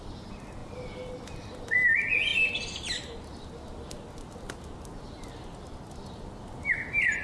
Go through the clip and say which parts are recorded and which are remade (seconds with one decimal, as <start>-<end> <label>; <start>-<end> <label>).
0.0-0.6 recorded; 0.6-1.1 remade; 1.1-7.2 recorded